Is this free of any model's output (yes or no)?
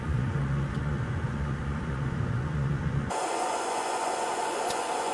no